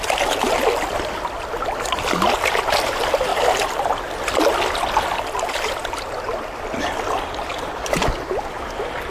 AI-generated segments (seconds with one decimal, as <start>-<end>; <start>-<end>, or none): none